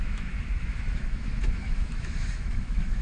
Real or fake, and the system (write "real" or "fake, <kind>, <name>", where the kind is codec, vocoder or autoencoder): fake, autoencoder, DAC-VAE